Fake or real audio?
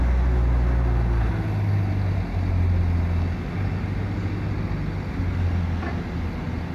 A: real